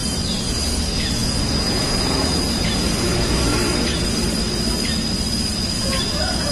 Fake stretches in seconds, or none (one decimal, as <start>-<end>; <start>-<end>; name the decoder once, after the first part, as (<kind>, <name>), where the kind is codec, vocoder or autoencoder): 0.0-4.1 (vocoder, Vocos); 5.7-6.5